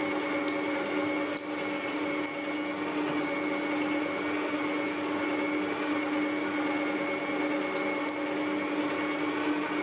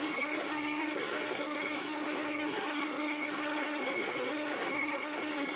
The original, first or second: first